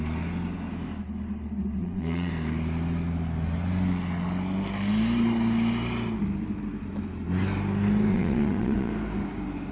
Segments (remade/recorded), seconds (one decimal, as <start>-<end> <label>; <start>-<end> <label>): 0.0-1.8 recorded; 1.8-2.3 remade; 2.3-8.1 recorded; 8.1-8.9 remade; 8.9-9.7 recorded